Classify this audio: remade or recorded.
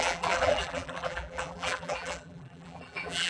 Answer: remade